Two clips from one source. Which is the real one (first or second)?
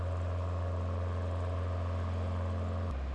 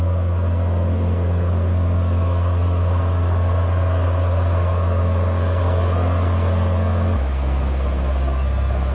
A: first